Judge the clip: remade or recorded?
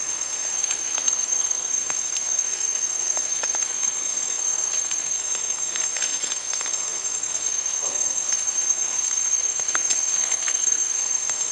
remade